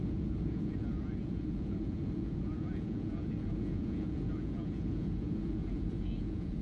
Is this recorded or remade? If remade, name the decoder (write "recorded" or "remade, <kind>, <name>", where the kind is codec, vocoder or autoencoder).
remade, vocoder, Vocos